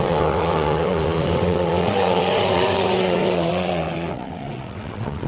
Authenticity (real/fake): fake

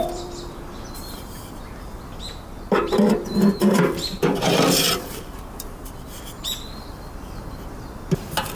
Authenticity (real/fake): fake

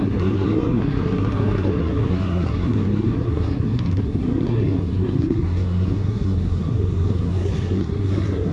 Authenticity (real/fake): fake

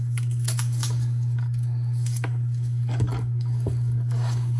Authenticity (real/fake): fake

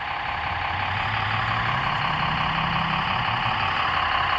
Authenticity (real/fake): real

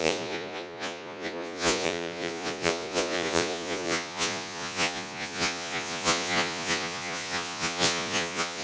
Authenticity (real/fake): fake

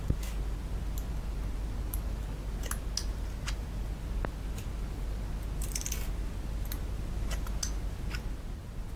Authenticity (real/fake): real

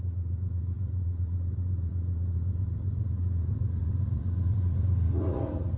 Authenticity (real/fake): fake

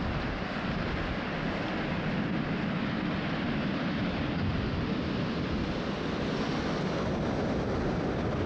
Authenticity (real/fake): real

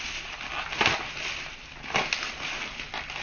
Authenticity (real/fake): real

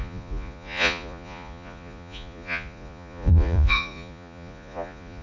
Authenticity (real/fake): fake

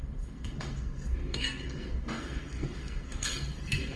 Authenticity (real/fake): fake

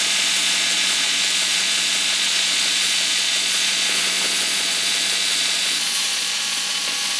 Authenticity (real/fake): fake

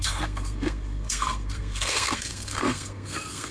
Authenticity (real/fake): fake